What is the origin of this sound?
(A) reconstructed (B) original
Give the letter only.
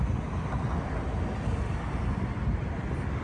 B